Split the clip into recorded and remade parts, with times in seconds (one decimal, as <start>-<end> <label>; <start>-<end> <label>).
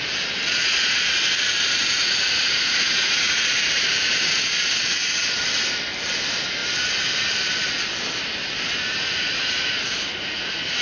0.0-0.6 recorded; 0.6-4.4 remade; 4.4-9.1 recorded; 9.1-10.8 remade